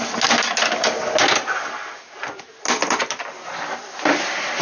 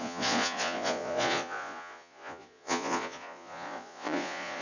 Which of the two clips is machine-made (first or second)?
second